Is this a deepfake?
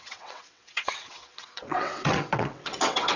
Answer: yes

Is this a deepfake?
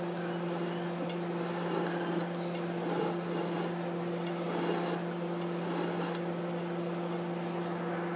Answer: no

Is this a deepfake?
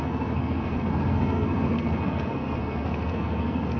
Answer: yes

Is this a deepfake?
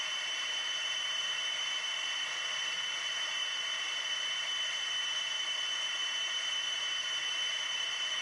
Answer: no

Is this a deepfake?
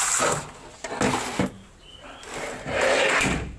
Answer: no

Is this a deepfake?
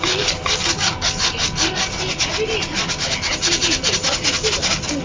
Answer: no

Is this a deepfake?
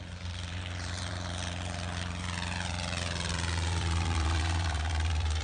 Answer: yes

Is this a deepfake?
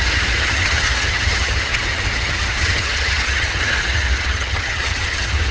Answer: yes